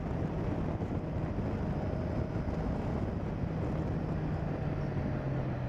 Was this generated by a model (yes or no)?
no